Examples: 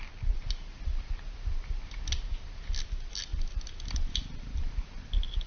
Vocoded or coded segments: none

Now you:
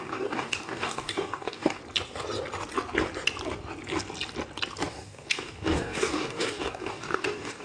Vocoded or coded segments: 0.0-1.8 (codec, DAC); 4.9-7.6

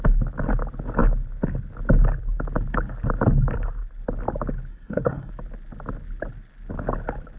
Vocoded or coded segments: 4.7-5.3 (codec, SNAC)

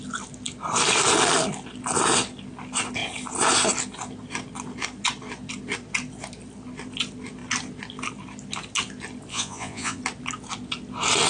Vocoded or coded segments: 9.3-10.0 (vocoder, Vocos)

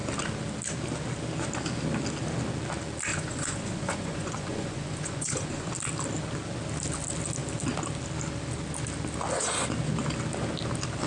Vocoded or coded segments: 3.1-5.7 (vocoder, Vocos)

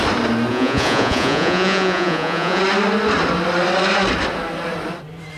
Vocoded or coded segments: 0.5-2.6 (vocoder, Vocos)